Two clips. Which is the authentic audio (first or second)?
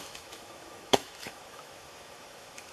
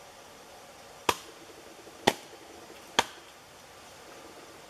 second